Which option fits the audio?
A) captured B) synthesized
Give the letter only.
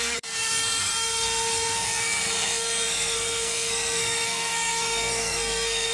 B